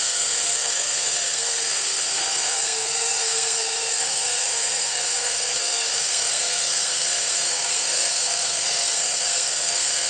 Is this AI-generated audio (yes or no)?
yes